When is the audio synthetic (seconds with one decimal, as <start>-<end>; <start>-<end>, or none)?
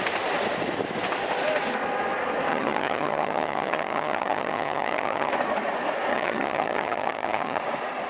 2.5-5.3; 6.1-7.6